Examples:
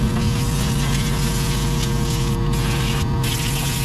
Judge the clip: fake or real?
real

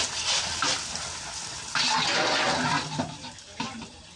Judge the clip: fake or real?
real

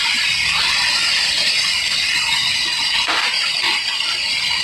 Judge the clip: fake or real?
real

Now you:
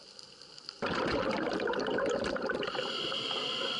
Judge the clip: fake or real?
real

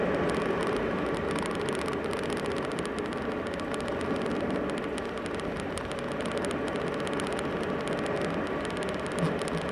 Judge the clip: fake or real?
real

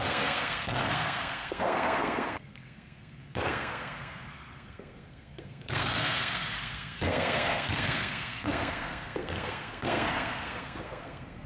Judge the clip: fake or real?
fake